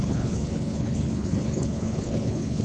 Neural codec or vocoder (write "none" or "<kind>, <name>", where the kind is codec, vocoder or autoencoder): codec, HILCodec